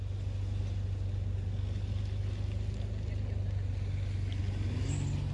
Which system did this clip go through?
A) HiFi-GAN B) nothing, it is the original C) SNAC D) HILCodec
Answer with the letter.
B